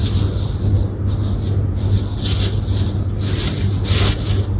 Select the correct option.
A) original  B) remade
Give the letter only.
A